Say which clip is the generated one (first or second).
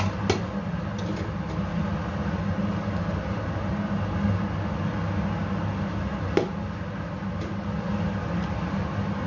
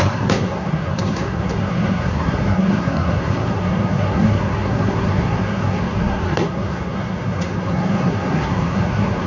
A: second